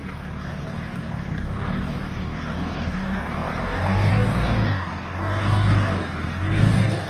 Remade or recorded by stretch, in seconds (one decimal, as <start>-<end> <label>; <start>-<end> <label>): 0.0-7.1 remade